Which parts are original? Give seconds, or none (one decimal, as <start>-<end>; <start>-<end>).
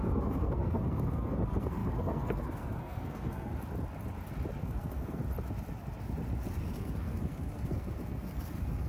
3.5-4.6; 5.2-6.6